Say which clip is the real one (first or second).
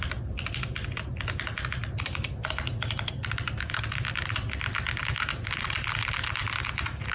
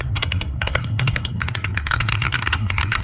first